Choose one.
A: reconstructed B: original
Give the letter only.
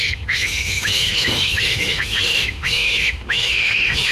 A